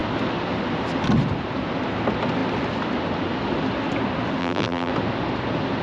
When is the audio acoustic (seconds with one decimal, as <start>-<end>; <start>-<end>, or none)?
0.0-4.4; 4.9-5.8